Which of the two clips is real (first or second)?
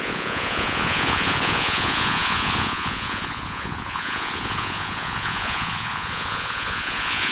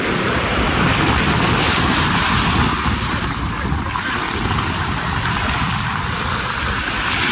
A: second